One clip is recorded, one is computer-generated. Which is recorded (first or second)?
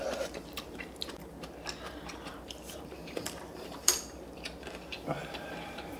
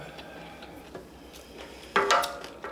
second